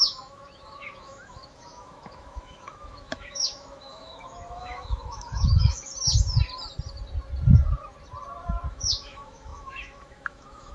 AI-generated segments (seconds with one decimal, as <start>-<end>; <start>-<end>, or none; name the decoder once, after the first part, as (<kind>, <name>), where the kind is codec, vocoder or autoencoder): 0.0-5.9 (autoencoder, DAC-VAE); 8.7-10.7